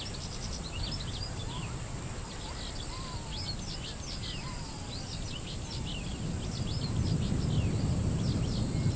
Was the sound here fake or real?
real